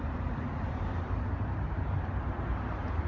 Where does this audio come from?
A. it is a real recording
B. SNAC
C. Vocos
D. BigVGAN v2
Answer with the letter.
D